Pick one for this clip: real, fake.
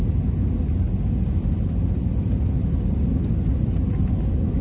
real